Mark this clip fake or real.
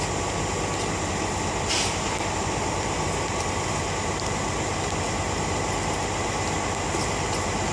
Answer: real